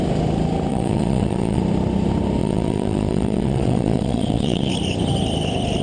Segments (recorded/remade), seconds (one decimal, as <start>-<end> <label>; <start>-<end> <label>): 0.0-0.7 recorded; 0.7-1.6 remade; 1.6-2.4 recorded; 2.4-4.7 remade; 4.7-5.8 recorded